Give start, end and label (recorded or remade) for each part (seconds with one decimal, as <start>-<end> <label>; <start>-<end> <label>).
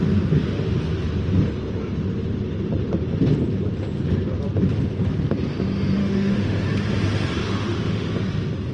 0.0-6.0 recorded; 6.0-6.6 remade; 6.6-7.4 recorded; 7.4-8.1 remade; 8.1-8.7 recorded